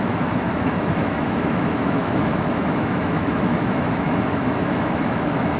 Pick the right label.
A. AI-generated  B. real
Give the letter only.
A